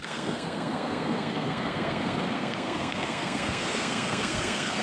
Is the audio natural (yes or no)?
no